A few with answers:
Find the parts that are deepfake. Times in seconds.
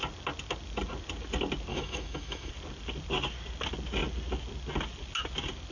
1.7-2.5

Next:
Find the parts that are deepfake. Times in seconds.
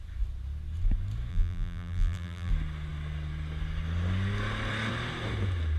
1.3-2.5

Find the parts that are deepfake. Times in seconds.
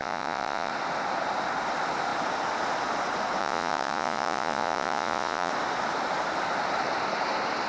0.0-0.7; 3.4-5.5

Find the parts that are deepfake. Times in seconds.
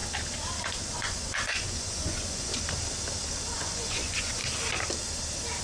0.6-2.5; 3.5-4.4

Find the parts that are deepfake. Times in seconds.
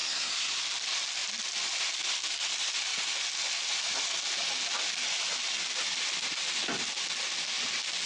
0.0-0.5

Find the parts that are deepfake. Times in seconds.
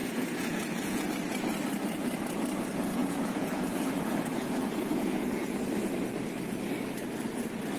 0.0-1.1; 2.9-5.6